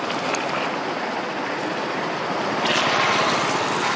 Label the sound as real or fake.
real